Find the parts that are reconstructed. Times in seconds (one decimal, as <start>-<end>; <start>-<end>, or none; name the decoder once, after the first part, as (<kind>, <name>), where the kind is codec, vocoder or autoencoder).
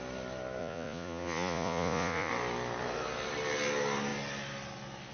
0.6-2.3 (vocoder, Vocos)